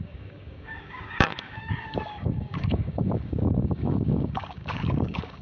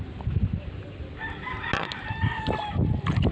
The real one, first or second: second